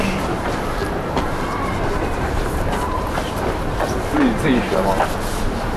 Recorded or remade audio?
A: remade